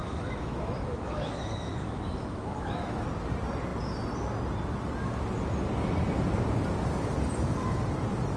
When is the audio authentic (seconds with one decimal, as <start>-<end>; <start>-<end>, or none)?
3.0-8.4